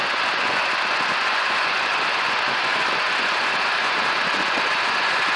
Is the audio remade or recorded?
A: remade